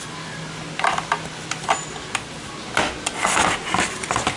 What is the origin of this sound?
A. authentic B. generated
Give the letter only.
A